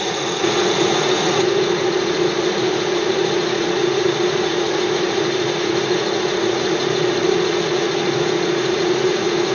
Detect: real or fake fake